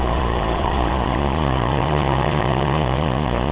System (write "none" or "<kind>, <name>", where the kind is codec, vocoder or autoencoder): vocoder, Vocos